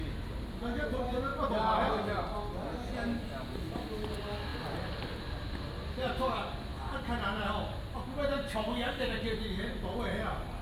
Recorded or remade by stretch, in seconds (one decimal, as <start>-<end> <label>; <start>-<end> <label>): 0.0-10.6 recorded